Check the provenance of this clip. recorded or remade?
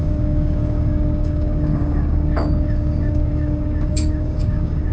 remade